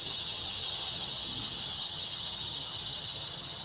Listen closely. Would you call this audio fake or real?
fake